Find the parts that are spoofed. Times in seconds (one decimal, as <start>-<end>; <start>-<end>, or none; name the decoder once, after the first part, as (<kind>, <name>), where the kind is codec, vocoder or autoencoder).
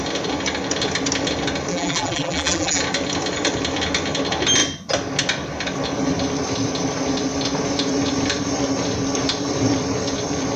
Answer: 1.7-2.8 (vocoder, BigVGAN v2)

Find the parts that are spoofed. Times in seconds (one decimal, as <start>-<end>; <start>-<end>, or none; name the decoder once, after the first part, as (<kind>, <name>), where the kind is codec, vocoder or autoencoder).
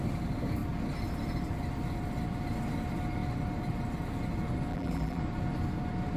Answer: 4.7-5.2 (vocoder, BigVGAN v2)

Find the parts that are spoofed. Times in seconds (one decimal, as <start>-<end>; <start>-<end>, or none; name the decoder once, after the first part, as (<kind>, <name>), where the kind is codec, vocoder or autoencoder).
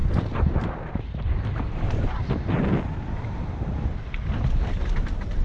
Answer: 0.0-2.3 (vocoder, BigVGAN v2)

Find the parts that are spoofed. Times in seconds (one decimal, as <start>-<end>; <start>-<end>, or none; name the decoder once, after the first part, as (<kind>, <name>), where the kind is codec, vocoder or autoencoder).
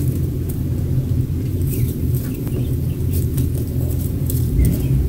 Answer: 1.5-4.6 (vocoder, BigVGAN v2)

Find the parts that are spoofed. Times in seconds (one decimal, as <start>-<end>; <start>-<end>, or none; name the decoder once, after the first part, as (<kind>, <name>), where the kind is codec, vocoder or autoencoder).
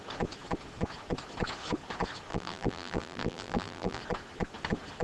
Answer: 2.3-4.0 (vocoder, BigVGAN v2)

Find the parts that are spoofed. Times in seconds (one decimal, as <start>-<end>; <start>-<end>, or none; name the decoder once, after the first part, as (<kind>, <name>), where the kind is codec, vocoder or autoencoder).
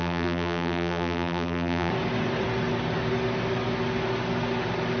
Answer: 0.0-1.9 (vocoder, BigVGAN v2)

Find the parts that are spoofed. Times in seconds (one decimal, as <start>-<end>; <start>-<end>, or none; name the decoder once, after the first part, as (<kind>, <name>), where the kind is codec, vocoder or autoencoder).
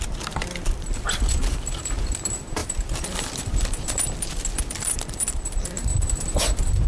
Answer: 0.0-6.9 (vocoder, BigVGAN v2)